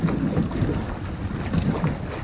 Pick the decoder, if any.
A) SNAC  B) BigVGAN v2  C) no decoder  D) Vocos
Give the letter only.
C